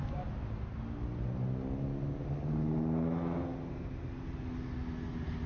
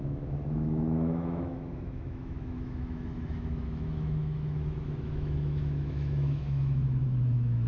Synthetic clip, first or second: second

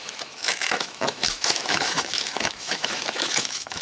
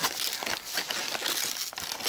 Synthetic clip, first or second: first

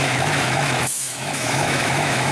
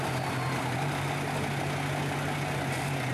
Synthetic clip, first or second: first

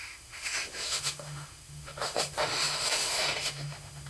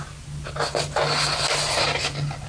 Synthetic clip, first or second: first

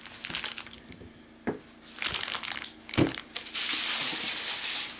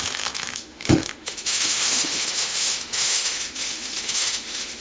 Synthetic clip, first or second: second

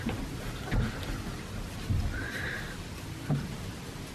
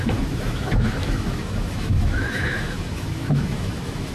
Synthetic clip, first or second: second